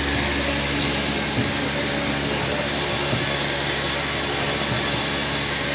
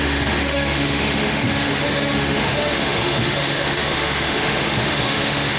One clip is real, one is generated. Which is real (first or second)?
first